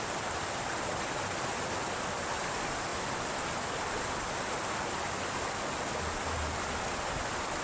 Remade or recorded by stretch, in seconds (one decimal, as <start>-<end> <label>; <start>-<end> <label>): 0.0-7.6 recorded